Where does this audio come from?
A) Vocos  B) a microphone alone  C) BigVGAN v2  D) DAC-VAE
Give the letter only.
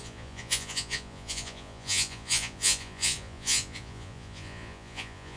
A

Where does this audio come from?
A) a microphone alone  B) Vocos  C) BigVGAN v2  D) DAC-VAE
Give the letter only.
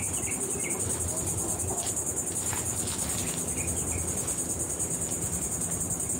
A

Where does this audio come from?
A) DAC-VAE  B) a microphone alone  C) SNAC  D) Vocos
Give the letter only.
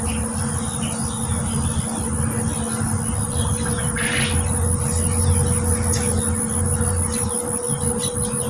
B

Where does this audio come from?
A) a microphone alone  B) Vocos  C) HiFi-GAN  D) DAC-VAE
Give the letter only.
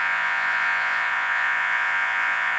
B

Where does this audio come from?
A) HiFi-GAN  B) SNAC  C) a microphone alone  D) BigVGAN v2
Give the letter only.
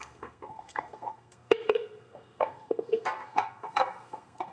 B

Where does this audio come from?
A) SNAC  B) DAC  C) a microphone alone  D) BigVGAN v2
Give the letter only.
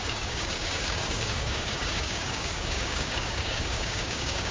B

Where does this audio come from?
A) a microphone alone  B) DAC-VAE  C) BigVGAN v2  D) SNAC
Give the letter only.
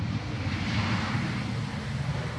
A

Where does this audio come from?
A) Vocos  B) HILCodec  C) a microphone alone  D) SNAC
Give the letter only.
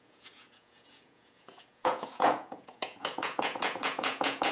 A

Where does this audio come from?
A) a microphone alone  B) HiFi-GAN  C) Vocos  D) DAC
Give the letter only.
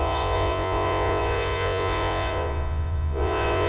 C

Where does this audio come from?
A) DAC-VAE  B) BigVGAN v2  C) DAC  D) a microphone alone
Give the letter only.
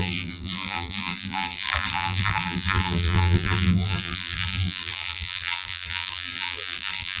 B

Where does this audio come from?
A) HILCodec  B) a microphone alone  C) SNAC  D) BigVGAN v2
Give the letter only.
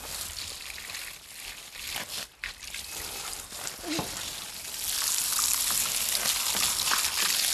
B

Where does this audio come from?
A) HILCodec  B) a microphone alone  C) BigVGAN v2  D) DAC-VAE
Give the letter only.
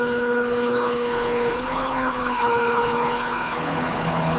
A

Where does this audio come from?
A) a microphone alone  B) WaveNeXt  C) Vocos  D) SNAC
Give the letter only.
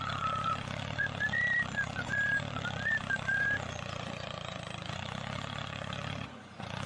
C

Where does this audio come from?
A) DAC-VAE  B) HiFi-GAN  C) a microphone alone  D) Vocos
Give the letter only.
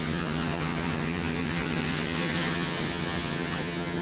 B